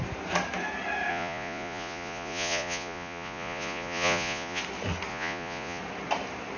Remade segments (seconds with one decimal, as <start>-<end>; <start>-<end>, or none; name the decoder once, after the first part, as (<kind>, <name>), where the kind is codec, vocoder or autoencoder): 1.1-4.6 (vocoder, Vocos); 5.1-5.8